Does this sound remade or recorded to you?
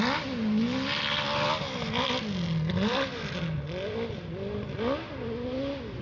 recorded